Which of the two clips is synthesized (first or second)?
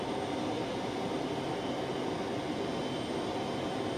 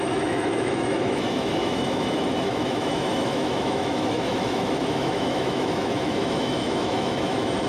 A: second